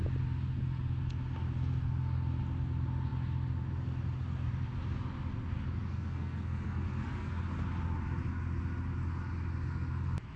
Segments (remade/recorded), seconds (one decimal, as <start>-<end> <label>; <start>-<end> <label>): 0.0-5.9 recorded; 5.9-7.4 remade; 7.4-10.4 recorded